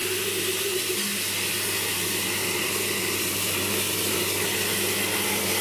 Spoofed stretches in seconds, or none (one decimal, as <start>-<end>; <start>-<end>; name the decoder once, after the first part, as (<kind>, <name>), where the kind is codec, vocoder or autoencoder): none